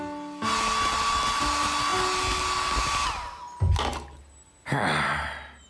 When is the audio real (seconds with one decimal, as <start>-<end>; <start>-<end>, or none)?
0.0-5.7